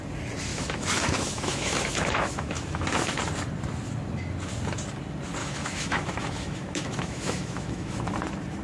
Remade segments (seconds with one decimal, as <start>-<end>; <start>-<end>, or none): 0.5-3.2; 5.4-8.1